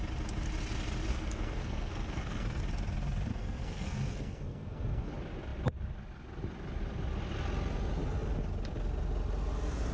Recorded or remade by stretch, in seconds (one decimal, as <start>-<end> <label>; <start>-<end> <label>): 0.0-1.1 recorded; 1.1-2.6 remade; 2.6-3.3 recorded; 3.3-5.1 remade; 5.1-9.9 recorded